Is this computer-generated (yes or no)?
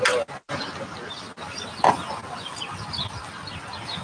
no